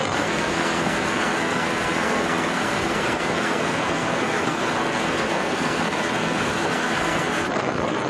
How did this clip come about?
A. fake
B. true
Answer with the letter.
A